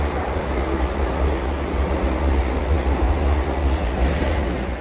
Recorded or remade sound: remade